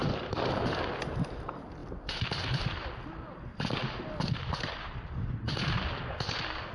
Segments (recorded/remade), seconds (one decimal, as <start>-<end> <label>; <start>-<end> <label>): 0.0-6.7 recorded